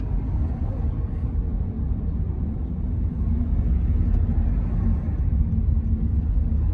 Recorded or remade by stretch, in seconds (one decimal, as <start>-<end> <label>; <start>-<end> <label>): 0.0-6.7 recorded